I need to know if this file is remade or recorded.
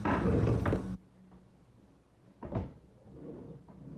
recorded